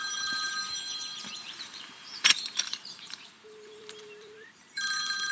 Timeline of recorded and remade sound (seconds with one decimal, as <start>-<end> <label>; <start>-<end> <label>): 0.0-5.3 remade